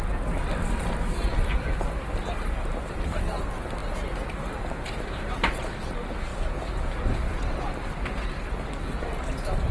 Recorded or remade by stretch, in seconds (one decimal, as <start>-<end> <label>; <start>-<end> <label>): 0.0-9.7 recorded